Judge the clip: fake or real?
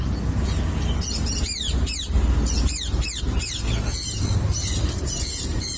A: real